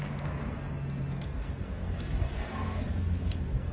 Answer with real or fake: fake